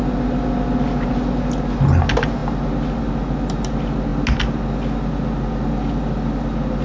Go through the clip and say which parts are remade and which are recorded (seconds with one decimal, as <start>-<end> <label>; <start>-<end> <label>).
0.0-6.8 recorded